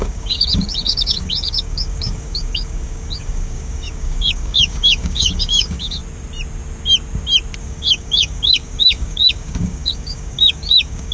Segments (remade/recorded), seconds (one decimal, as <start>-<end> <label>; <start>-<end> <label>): 0.0-6.0 remade; 6.0-7.6 recorded; 7.6-11.1 remade